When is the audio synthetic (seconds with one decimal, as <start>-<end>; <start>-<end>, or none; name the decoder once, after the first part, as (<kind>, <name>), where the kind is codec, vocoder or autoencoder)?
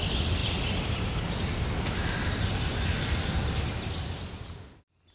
none